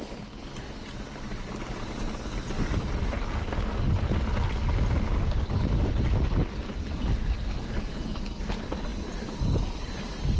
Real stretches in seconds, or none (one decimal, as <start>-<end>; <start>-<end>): 0.0-10.4